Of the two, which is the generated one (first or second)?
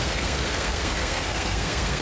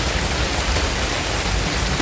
first